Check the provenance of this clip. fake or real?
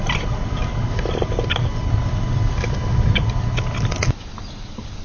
real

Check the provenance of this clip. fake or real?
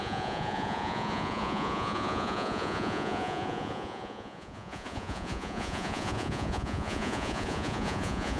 fake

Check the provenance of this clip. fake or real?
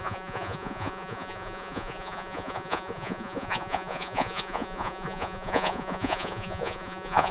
fake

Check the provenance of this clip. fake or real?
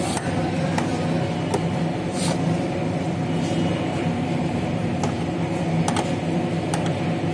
real